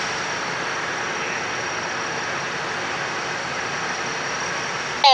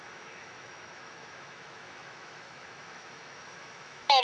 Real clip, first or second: first